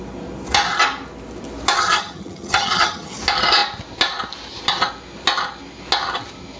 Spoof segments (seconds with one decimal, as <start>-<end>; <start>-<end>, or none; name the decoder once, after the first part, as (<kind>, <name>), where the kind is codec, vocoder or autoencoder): 1.8-3.2 (vocoder, HiFi-GAN)